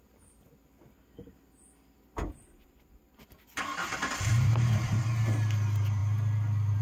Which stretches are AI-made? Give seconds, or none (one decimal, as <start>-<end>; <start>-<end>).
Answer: none